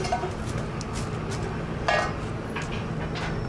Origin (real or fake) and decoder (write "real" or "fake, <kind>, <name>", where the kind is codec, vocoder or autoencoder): real